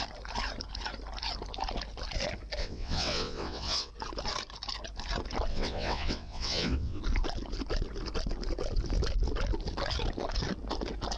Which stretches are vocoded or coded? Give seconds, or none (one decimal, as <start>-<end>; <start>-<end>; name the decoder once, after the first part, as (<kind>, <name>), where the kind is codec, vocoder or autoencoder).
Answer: 2.6-3.9 (vocoder, WaveNeXt); 5.5-7.0